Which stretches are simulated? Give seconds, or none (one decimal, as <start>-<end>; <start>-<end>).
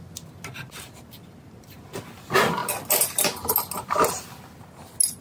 none